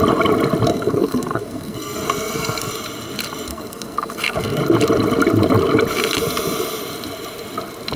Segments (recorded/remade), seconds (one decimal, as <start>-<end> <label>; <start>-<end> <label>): 0.0-0.7 recorded; 0.7-2.7 remade; 2.7-3.5 recorded; 3.5-4.6 remade; 4.6-8.0 recorded